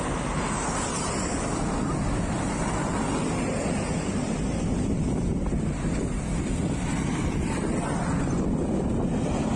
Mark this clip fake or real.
real